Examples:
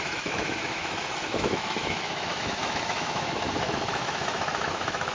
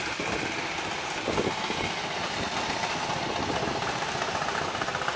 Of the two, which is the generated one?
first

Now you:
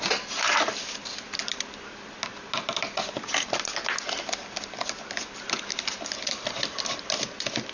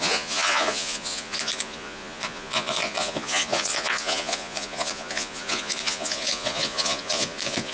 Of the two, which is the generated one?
second